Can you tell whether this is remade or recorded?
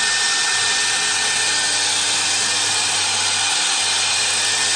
recorded